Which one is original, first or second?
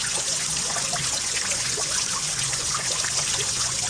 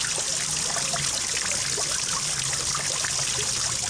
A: second